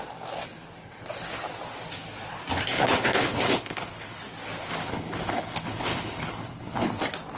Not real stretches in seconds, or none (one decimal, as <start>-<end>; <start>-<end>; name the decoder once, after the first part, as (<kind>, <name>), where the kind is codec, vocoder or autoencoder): 2.7-4.2 (codec, HILCodec); 4.7-7.0